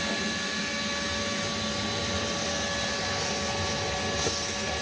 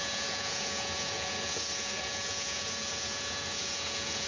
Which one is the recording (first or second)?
first